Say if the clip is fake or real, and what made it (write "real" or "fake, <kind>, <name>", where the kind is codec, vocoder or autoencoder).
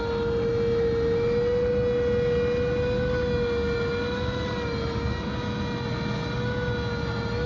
real